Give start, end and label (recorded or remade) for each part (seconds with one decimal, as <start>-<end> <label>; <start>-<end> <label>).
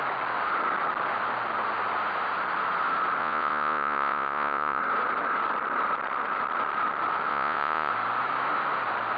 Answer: 0.0-3.2 recorded; 3.2-4.8 remade; 4.8-7.3 recorded; 7.3-7.9 remade; 7.9-9.2 recorded